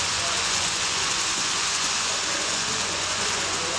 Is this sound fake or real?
fake